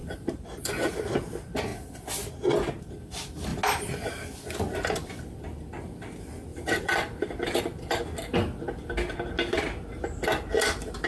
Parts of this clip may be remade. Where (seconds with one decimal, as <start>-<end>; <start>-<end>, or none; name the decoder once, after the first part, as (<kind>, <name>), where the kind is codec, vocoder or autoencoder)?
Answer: 0.0-0.9 (vocoder, BigVGAN v2); 6.5-8.0